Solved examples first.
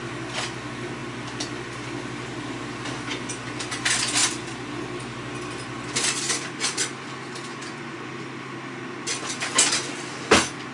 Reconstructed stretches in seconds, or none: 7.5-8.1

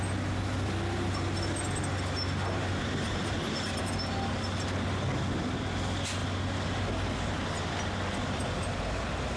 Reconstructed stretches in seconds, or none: none

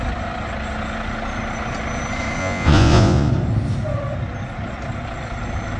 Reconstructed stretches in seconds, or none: 2.4-3.3